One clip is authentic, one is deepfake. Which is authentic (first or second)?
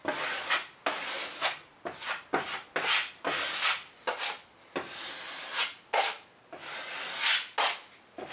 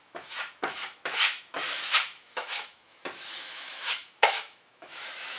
first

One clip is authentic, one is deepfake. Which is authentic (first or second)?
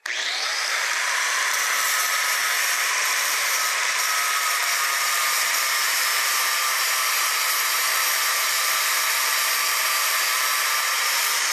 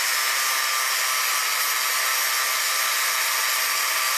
second